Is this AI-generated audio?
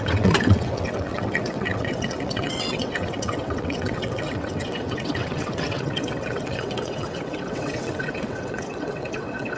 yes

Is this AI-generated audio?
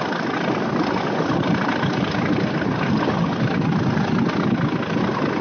no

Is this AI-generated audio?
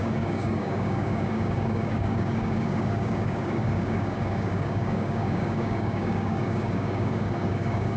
yes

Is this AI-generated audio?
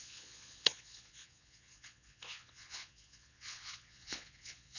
yes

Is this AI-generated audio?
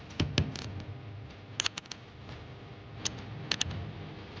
no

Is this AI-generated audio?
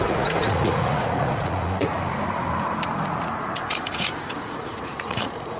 yes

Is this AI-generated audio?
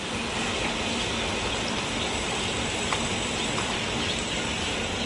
no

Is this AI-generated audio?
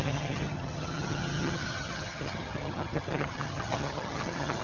yes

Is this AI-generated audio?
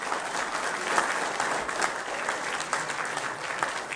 no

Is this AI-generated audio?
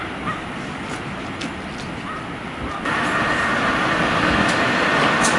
no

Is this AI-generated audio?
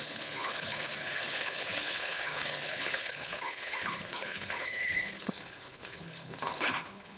yes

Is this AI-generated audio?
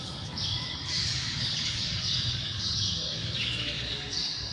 yes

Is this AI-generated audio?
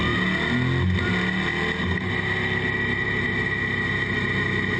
no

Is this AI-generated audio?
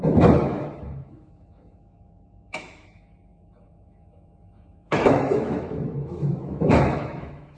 yes